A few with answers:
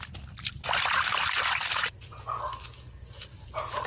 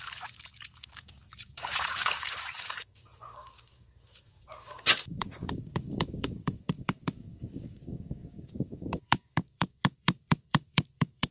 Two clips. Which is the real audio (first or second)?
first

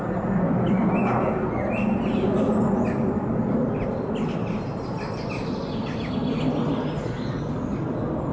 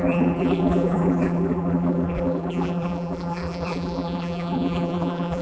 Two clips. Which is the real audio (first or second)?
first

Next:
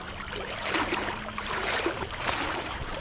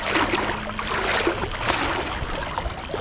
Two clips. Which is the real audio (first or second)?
second